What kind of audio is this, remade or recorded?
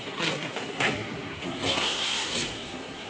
remade